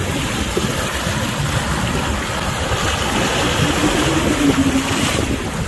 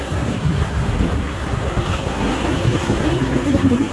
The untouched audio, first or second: first